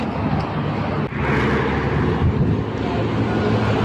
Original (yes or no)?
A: yes